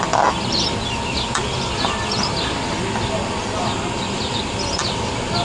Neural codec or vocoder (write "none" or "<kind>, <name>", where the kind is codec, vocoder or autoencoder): none